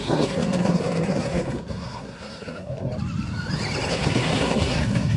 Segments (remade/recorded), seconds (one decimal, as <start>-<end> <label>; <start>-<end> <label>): 0.0-2.9 remade; 2.9-3.9 recorded; 3.9-5.2 remade